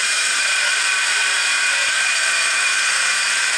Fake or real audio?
fake